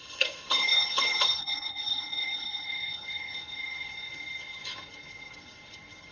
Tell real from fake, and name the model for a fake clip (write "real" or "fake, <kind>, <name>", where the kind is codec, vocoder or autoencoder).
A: fake, codec, HILCodec